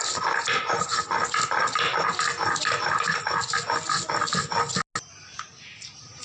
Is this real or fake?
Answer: real